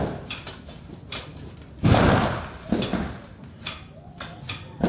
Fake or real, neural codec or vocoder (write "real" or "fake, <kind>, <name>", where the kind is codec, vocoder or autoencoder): real